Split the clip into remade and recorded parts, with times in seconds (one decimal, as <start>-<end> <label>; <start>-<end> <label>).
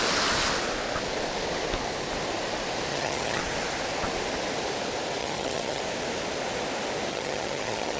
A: 0.0-2.9 recorded; 2.9-3.4 remade; 3.4-5.2 recorded; 5.2-5.8 remade; 5.8-7.1 recorded; 7.1-8.0 remade